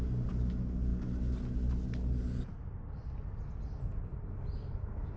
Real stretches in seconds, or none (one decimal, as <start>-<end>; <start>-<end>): 0.0-5.2